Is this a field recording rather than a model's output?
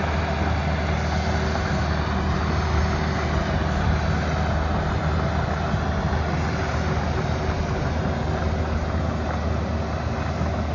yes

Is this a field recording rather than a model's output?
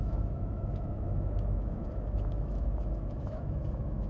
no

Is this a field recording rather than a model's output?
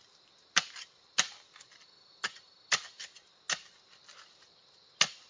yes